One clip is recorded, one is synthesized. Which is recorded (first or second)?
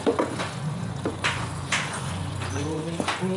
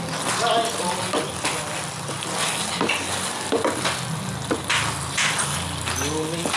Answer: second